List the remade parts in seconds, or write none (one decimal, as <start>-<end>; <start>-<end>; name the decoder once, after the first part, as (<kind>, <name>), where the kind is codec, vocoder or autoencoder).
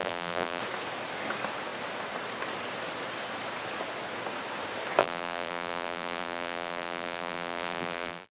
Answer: 0.0-0.6 (vocoder, BigVGAN v2); 5.0-8.3